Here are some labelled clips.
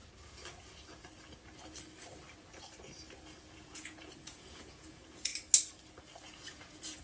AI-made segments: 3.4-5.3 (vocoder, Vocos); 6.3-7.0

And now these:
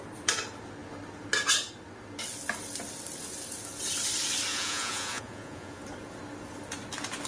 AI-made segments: 4.5-5.8 (vocoder, Vocos)